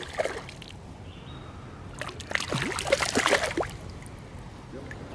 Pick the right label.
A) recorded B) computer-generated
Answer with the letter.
A